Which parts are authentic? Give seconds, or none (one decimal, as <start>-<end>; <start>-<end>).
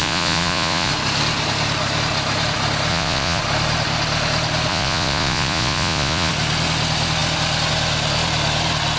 0.9-2.9; 3.4-4.7; 6.3-9.0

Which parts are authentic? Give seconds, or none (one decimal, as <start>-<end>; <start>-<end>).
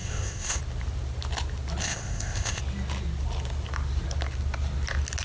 0.6-1.8; 2.6-5.2